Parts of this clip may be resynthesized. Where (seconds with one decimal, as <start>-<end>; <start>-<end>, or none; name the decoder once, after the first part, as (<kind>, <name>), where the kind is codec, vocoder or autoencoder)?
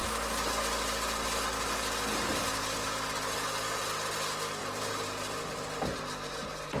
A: 4.6-6.8 (vocoder, BigVGAN v2)